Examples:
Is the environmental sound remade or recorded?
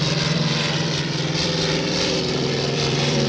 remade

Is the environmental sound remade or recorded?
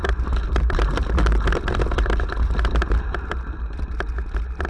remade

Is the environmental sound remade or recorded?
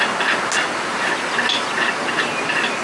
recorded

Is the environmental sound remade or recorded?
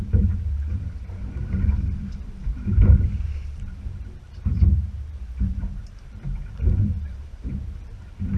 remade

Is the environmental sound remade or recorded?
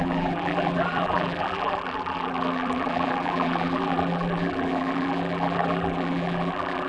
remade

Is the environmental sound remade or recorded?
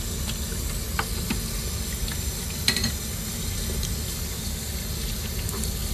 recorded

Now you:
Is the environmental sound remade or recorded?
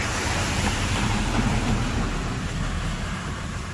remade